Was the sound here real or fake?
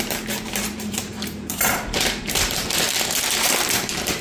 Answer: fake